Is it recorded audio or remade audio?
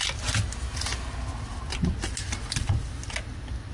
recorded